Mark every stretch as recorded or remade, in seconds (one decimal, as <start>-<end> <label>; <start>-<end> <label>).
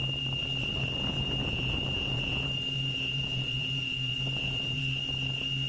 0.0-1.4 recorded; 1.4-4.8 remade; 4.8-5.7 recorded